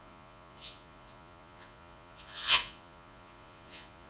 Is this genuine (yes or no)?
no